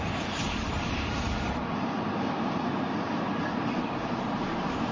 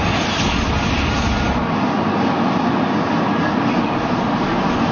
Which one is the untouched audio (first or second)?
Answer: second